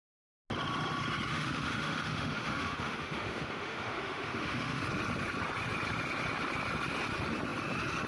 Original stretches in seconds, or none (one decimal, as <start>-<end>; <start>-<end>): 0.0-1.3; 4.9-8.1